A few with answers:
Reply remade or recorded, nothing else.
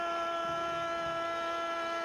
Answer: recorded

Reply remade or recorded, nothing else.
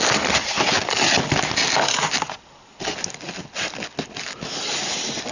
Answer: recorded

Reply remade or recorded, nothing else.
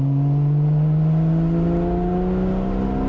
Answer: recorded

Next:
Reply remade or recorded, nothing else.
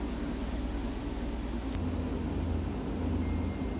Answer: recorded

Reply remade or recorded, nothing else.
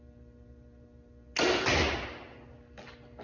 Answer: recorded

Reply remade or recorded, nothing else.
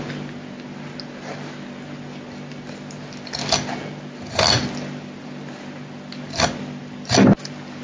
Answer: recorded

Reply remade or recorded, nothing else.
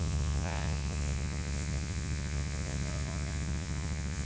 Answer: remade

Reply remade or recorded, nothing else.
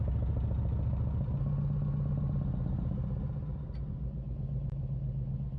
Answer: recorded